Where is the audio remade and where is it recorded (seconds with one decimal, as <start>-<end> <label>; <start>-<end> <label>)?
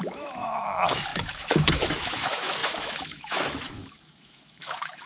0.0-5.1 remade